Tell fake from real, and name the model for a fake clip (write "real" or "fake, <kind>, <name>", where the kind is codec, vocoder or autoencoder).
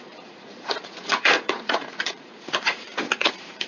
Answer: fake, vocoder, Vocos